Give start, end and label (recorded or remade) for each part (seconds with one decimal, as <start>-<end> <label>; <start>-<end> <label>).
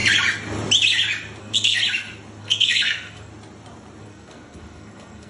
0.0-1.4 recorded; 1.4-1.8 remade; 1.8-2.4 recorded; 2.4-3.3 remade; 3.3-4.0 recorded; 4.0-5.3 remade